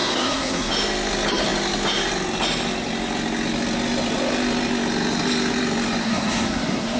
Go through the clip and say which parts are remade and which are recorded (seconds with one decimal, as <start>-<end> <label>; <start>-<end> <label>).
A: 0.0-0.7 remade; 0.7-6.0 recorded; 6.0-7.0 remade